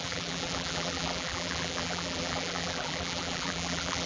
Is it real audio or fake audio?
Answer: fake